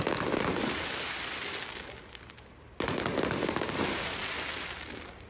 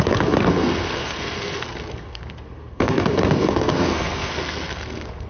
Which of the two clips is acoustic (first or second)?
first